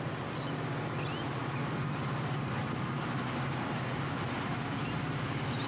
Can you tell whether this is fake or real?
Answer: real